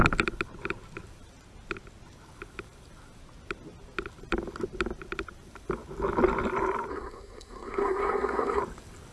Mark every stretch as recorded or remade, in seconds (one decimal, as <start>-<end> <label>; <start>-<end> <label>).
0.0-6.9 recorded; 6.9-8.6 remade; 8.6-9.1 recorded